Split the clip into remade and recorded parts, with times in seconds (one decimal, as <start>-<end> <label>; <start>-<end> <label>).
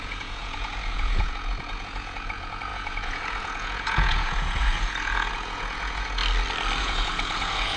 0.0-6.2 remade; 6.2-6.8 recorded; 6.8-7.8 remade